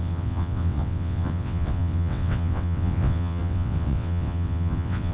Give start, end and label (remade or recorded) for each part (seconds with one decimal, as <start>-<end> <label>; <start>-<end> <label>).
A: 0.0-5.1 remade